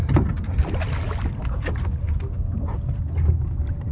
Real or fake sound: real